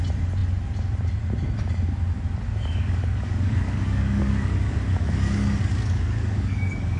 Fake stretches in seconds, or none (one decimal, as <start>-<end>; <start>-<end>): 2.5-7.0